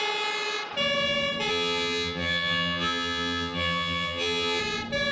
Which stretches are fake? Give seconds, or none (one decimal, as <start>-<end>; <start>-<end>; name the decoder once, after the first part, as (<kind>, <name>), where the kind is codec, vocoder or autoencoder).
1.5-4.6 (vocoder, HiFi-GAN)